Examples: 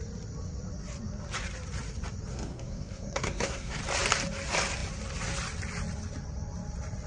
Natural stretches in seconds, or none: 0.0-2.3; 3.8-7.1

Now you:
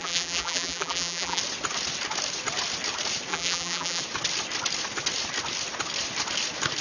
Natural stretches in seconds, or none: 1.4-3.3; 4.0-6.8

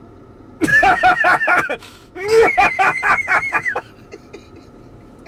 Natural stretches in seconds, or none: 0.0-0.7; 3.9-5.3

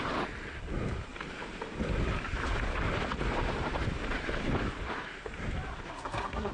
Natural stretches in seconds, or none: 0.0-5.9

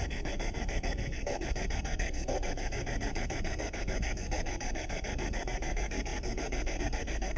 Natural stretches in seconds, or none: none

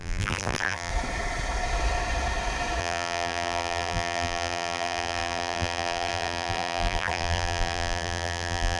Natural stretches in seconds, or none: 0.9-2.8

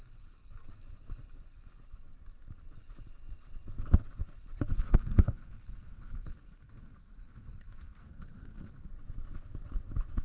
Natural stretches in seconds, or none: 0.0-4.7; 8.9-10.2

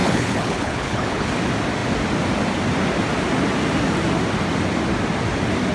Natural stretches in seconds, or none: 1.3-5.7